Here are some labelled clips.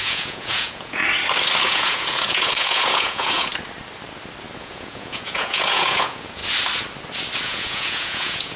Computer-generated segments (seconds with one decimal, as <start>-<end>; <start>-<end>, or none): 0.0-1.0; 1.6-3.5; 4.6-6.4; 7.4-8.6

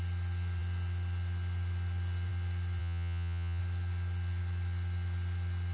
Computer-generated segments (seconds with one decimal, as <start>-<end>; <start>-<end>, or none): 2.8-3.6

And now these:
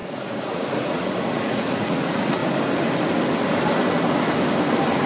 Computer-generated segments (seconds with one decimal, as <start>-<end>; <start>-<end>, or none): 0.0-2.4

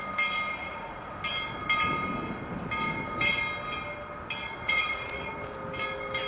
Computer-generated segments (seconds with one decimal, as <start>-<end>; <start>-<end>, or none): 0.6-1.2; 4.6-5.3